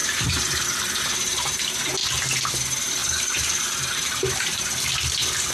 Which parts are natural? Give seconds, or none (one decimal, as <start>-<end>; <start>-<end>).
1.6-3.0; 4.6-5.5